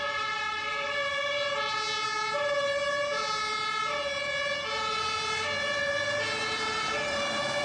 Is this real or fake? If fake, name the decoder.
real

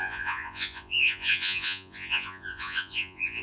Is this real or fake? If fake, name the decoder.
fake, vocoder, Vocos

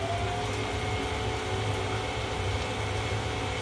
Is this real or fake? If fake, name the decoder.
real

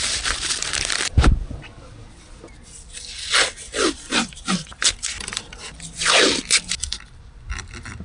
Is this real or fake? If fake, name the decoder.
fake, vocoder, BigVGAN v2